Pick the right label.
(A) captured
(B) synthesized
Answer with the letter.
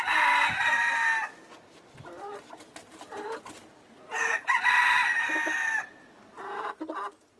A